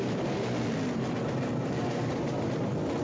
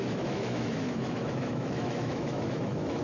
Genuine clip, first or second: first